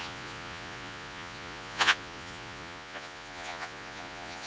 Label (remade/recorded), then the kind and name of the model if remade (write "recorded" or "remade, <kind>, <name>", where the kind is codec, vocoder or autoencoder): remade, vocoder, Vocos